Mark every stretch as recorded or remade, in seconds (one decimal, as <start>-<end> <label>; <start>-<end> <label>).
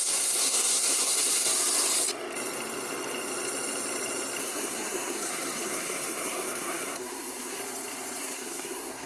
0.0-1.5 remade; 1.5-4.4 recorded; 4.4-7.6 remade; 7.6-8.2 recorded; 8.2-9.1 remade